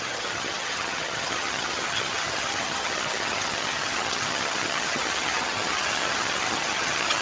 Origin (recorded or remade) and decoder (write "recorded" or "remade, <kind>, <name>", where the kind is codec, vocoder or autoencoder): remade, vocoder, HiFi-GAN